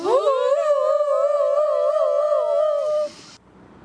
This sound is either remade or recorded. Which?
recorded